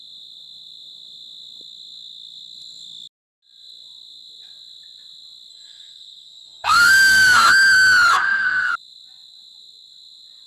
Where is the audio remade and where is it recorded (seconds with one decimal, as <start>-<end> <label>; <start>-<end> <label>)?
0.0-5.5 recorded; 5.5-7.5 remade; 7.5-8.1 recorded; 8.1-8.7 remade; 8.7-10.5 recorded